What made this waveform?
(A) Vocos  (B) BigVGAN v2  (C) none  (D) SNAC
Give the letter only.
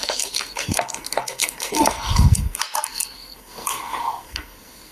D